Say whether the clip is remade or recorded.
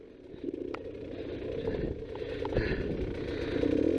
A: recorded